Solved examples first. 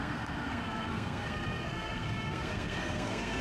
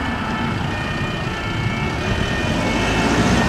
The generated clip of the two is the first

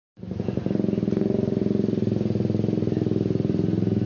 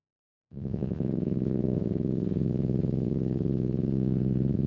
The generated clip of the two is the second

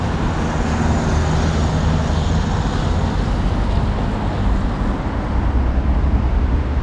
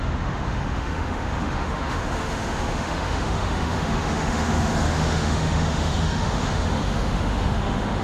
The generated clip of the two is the second